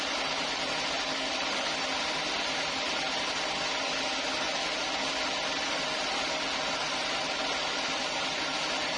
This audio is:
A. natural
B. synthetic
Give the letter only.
A